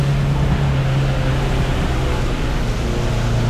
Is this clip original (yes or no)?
yes